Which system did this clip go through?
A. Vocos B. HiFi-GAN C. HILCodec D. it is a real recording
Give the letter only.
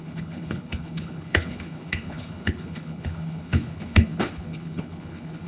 C